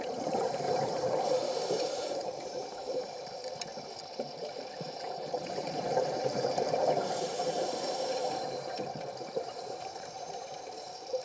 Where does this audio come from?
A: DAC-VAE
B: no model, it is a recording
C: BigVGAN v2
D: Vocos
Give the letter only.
C